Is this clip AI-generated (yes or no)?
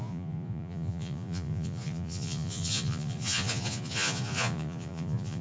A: yes